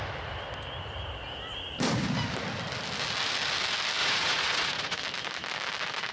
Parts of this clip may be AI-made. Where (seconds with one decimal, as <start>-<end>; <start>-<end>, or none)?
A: 4.0-5.0